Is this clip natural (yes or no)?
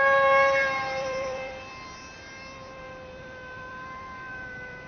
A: no